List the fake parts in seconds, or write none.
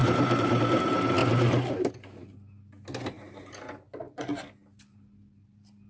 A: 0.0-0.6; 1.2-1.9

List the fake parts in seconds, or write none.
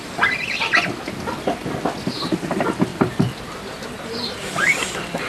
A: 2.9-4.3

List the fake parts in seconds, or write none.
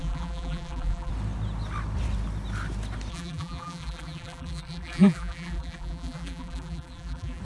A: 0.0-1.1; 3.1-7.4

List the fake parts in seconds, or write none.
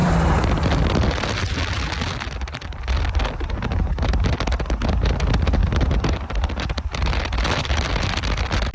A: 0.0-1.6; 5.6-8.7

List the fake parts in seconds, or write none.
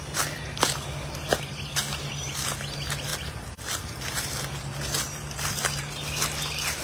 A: none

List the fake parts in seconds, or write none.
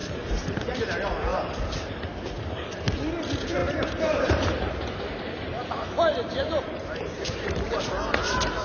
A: 0.0-0.8; 1.3-2.7; 3.6-7.8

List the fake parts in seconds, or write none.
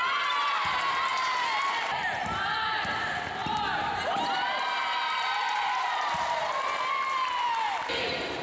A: 3.4-6.4